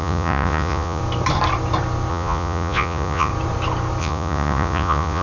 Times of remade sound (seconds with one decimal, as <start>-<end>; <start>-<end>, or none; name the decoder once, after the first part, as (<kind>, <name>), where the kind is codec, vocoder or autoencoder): 0.0-1.0 (vocoder, Vocos); 2.1-3.3; 4.0-5.2